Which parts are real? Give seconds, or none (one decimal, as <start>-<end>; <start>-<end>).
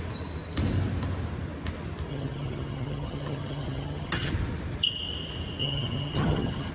0.0-2.1; 4.3-5.6